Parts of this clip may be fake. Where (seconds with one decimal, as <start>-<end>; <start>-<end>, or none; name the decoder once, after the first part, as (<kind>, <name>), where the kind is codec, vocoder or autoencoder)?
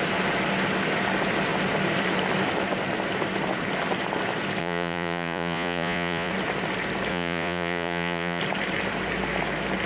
4.6-6.3 (vocoder, Vocos); 7.1-8.4